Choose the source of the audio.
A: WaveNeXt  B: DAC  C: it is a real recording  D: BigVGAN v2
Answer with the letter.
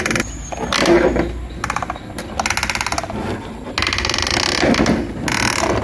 C